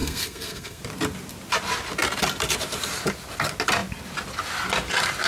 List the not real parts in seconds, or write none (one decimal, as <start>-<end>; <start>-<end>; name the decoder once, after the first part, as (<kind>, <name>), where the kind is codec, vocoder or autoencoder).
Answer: 0.0-0.8 (codec, SNAC)